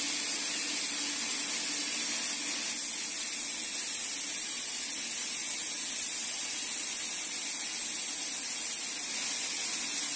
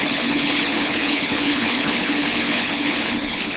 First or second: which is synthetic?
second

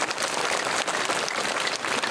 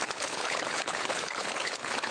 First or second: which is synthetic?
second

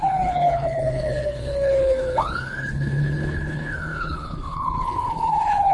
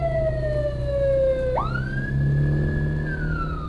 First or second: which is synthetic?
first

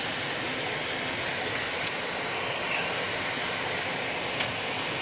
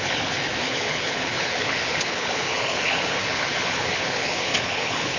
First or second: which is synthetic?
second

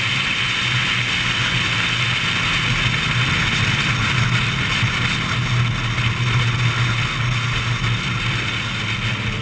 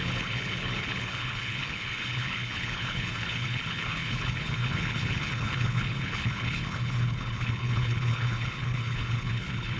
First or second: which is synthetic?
second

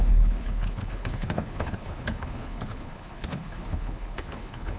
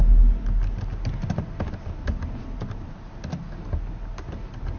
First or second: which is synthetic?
first